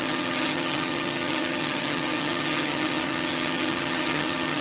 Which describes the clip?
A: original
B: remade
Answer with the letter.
B